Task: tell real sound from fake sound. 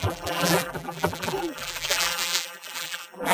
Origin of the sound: fake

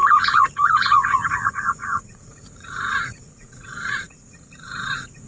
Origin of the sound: fake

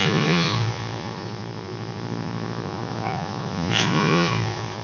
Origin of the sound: fake